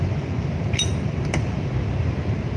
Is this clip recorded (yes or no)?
yes